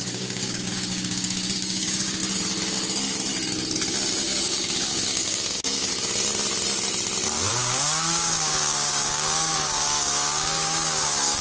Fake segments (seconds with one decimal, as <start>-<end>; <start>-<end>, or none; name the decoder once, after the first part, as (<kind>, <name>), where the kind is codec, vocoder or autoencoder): 0.0-2.2 (codec, DAC); 4.1-5.9; 7.5-11.4

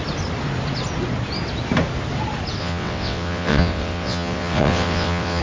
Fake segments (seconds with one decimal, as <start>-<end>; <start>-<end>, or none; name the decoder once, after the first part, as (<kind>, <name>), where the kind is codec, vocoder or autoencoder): 2.6-5.4 (vocoder, WaveNeXt)

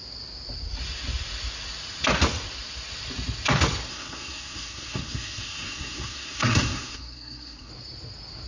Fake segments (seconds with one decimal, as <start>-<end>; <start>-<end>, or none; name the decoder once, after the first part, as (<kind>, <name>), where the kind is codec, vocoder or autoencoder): 3.9-7.7 (codec, SNAC)